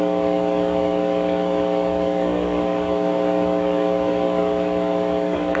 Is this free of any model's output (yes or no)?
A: no